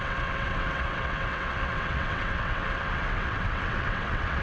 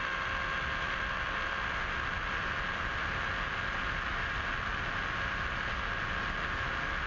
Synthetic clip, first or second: first